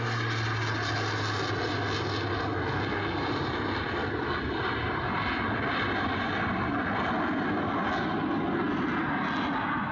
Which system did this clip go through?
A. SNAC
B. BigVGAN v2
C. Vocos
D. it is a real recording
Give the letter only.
D